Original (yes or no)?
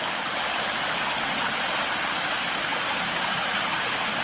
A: yes